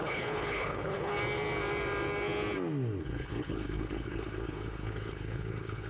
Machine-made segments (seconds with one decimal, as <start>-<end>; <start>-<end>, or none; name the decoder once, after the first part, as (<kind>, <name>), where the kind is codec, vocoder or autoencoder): 0.0-1.1 (codec, HILCodec); 3.0-5.9